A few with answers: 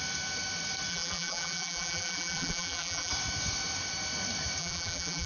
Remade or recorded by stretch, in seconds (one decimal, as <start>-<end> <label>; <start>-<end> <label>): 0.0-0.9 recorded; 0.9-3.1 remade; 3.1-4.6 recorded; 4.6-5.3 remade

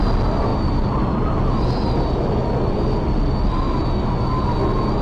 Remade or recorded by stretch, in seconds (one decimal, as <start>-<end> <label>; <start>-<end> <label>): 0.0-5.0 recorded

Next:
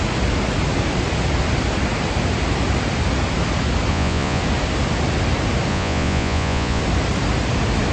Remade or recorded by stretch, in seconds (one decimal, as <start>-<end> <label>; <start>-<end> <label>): 0.0-3.9 recorded; 3.9-4.4 remade; 4.4-5.7 recorded; 5.7-6.8 remade; 6.8-7.9 recorded